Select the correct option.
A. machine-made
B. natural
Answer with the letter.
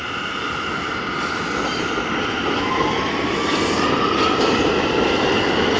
B